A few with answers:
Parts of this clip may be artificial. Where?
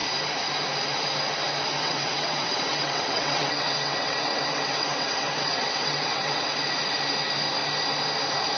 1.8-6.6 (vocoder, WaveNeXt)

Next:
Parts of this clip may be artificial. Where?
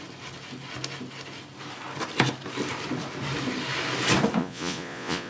4.4-5.3 (vocoder, Vocos)